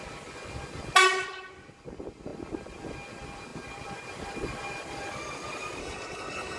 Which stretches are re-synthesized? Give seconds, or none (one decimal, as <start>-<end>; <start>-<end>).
5.8-6.6